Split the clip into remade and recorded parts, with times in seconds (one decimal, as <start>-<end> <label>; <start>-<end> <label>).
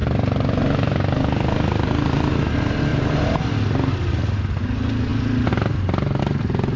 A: 0.0-2.9 recorded; 2.9-3.5 remade; 3.5-6.8 recorded